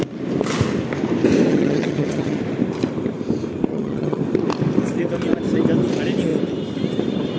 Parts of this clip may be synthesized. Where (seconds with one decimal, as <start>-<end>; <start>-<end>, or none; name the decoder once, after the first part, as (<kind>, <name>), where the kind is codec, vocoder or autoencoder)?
1.5-2.4 (vocoder, HiFi-GAN); 3.7-4.2